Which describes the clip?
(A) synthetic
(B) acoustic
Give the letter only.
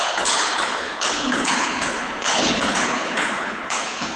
A